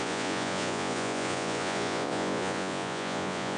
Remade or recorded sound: remade